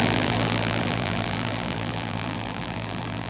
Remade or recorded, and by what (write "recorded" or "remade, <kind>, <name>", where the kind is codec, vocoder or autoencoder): remade, vocoder, BigVGAN v2